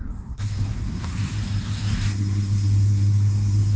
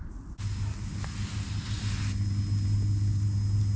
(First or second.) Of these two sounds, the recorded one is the second